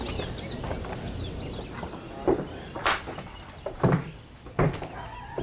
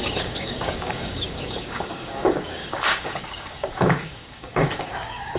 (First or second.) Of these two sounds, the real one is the first